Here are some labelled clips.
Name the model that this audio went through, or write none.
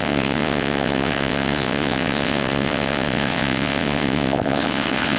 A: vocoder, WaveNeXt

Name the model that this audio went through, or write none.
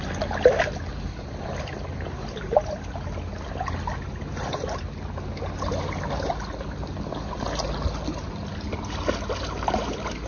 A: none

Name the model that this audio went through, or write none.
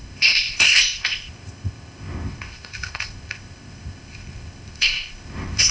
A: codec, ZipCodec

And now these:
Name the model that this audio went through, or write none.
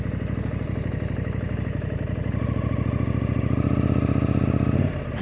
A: none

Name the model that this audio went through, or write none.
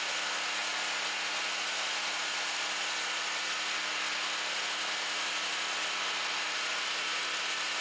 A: none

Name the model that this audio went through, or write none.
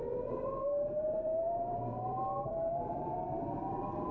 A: vocoder, BigVGAN v2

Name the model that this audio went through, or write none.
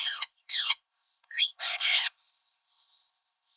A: codec, ZipCodec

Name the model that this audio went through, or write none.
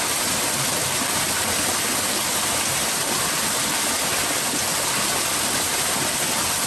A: none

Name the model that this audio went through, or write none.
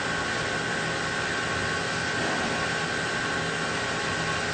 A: none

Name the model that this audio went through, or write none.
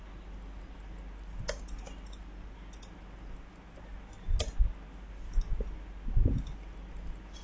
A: none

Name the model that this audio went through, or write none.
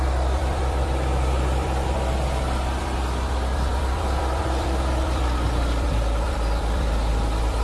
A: vocoder, BigVGAN v2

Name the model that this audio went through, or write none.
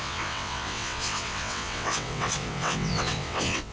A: vocoder, WaveNeXt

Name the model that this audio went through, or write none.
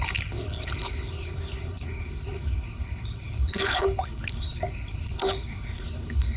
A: codec, HILCodec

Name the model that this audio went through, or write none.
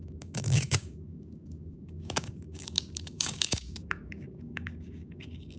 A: codec, DAC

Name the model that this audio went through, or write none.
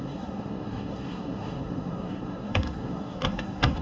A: codec, SNAC